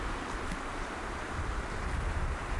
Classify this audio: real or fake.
fake